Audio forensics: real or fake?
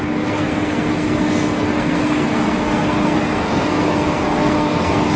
fake